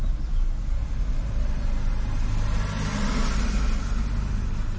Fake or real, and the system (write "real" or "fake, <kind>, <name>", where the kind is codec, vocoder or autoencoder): real